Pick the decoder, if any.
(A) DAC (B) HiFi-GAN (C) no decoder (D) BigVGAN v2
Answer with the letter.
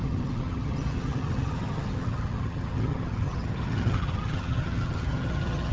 B